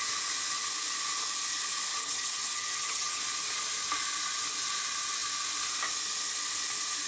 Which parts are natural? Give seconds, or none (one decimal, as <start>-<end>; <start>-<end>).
0.0-1.9; 3.2-7.1

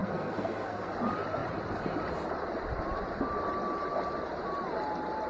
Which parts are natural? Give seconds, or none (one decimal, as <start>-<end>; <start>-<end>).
0.9-5.3

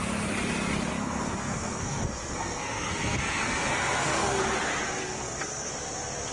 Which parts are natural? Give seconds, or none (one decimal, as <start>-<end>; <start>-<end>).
0.0-0.9; 4.4-5.0; 5.7-6.3